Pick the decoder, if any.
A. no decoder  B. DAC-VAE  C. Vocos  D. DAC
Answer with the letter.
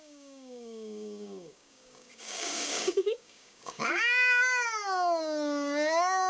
D